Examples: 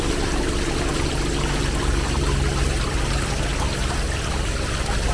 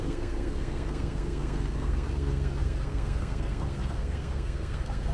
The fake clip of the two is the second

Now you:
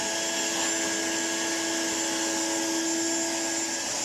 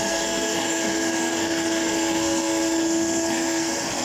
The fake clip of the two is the second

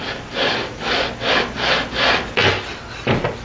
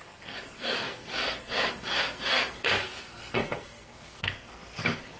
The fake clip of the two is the second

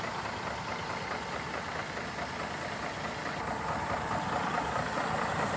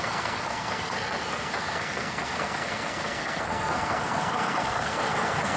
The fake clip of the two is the second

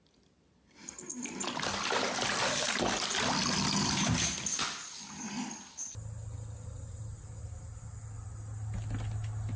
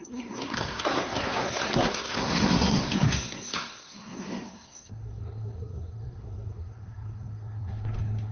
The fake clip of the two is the second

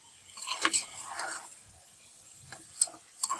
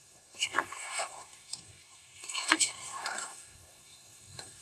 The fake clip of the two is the second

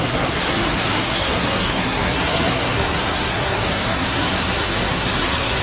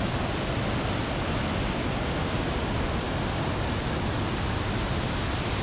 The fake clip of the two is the first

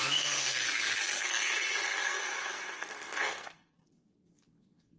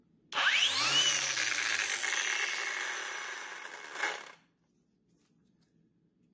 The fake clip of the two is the first